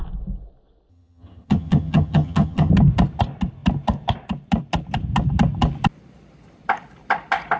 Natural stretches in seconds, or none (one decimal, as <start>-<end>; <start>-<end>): 0.0-0.9; 2.7-7.6

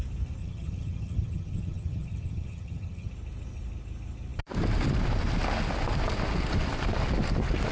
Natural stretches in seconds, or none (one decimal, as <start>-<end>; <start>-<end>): 0.0-0.4; 3.1-7.7

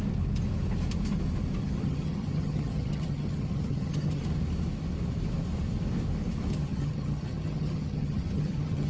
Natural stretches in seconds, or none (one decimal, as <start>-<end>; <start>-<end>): 0.0-1.6; 4.2-6.5

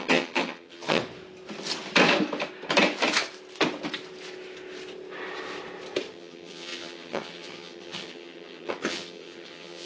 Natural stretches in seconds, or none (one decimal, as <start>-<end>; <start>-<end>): 1.0-6.1

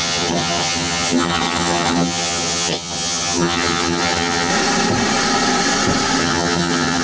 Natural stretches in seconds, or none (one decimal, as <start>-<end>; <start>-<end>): 4.5-6.2